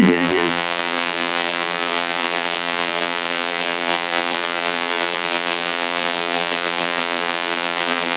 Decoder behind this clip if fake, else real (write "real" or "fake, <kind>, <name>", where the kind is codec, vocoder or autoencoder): fake, vocoder, BigVGAN v2